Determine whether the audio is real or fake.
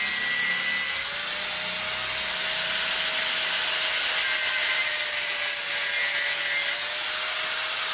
real